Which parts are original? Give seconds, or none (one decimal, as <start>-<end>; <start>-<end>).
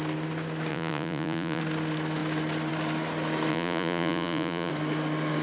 0.0-0.7; 1.6-3.5; 4.7-5.4